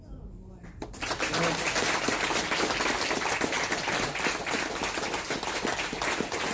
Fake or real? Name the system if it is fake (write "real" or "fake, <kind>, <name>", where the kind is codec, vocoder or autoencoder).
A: real